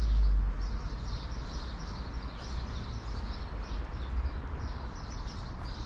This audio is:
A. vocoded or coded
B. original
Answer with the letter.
B